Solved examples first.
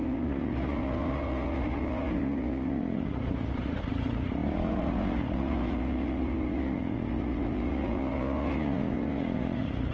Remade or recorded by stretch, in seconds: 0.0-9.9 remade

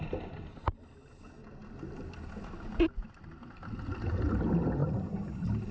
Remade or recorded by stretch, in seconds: 0.0-5.7 recorded

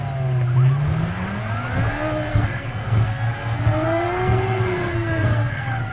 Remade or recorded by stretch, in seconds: 0.0-2.3 recorded; 2.3-5.9 remade